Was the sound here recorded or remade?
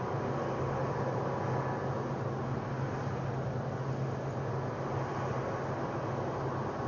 recorded